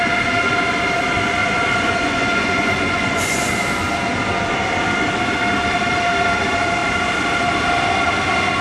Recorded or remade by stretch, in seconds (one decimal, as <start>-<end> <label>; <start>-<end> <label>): 0.0-1.4 recorded; 1.4-3.5 remade; 3.5-8.6 recorded